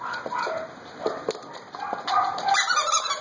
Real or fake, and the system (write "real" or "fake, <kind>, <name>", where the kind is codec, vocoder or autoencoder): real